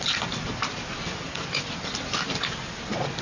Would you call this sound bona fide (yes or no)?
yes